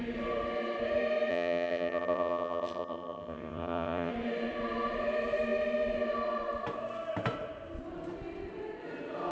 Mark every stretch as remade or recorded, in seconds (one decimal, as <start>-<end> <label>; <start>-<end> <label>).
0.0-1.3 recorded; 1.3-4.1 remade; 4.1-9.3 recorded